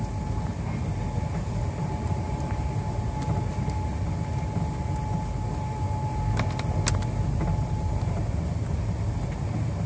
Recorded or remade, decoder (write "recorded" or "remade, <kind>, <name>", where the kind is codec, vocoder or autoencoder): recorded